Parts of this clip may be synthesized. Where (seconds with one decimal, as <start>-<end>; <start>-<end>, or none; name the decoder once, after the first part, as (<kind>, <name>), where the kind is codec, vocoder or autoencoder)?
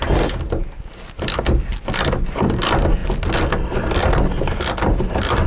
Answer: none